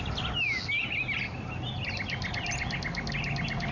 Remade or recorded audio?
recorded